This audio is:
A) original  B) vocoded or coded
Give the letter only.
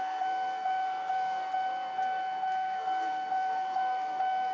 B